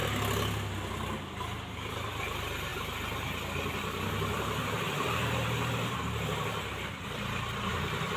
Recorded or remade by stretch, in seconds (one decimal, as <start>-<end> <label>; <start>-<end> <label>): 0.0-1.9 recorded; 1.9-2.7 remade; 2.7-3.7 recorded; 3.7-8.2 remade